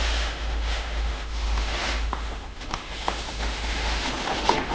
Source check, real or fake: fake